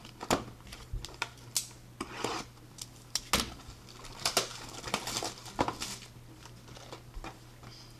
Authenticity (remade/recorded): recorded